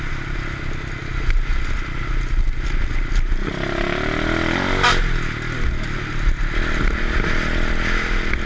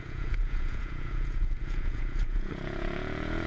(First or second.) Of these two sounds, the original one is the first